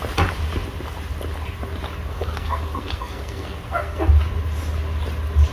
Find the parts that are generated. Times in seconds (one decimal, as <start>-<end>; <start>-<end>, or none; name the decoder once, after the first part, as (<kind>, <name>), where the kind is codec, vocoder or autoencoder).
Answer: 2.1-4.1 (codec, SNAC)